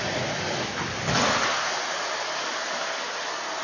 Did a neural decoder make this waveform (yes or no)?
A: no